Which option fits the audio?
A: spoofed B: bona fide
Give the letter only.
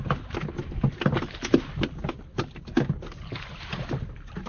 B